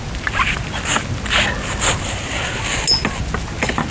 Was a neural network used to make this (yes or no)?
no